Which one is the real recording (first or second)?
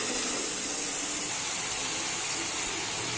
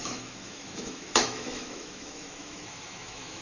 first